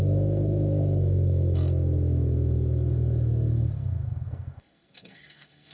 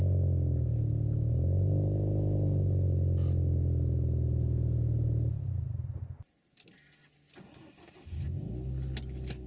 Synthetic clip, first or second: first